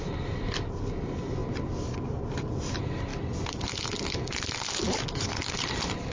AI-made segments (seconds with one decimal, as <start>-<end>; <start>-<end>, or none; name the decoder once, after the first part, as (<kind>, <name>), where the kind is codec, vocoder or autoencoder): none